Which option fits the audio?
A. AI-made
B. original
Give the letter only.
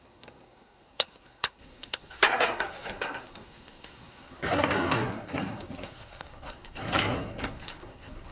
A